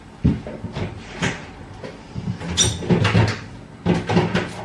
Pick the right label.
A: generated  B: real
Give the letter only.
B